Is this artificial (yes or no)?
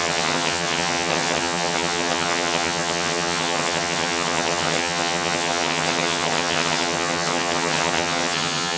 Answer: yes